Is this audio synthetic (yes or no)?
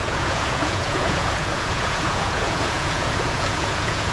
yes